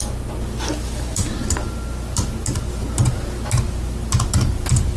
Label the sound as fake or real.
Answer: real